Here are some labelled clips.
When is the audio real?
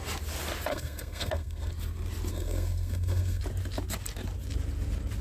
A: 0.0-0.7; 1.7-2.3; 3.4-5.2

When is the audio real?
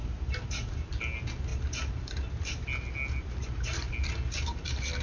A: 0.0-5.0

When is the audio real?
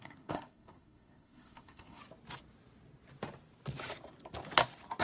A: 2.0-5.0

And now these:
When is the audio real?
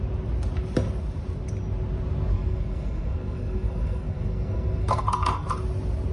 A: 0.0-2.3; 5.5-6.1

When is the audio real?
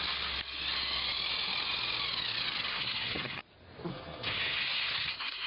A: 0.0-2.7; 3.4-3.9